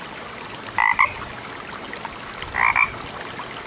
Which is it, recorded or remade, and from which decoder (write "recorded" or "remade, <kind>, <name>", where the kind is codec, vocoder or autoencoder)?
recorded